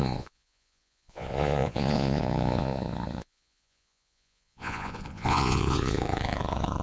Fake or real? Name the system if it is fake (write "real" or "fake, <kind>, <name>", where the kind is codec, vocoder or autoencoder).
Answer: fake, vocoder, Vocos